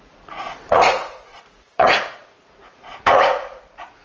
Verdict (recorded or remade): remade